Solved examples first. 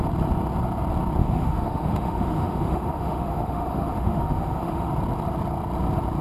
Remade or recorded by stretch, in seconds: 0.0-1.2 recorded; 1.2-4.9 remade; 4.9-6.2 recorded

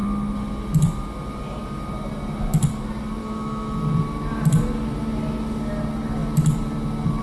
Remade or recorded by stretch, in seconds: 0.0-3.2 recorded; 3.2-3.8 remade; 3.8-7.2 recorded

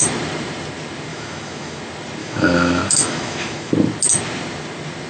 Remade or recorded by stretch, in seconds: 0.0-1.1 recorded; 1.1-1.8 remade; 1.8-2.2 recorded; 2.2-3.7 remade; 3.7-5.1 recorded

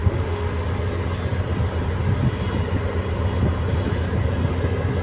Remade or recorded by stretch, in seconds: 0.0-0.6 remade; 0.6-5.0 recorded

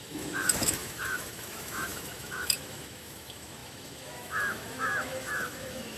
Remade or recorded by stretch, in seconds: 0.0-6.0 remade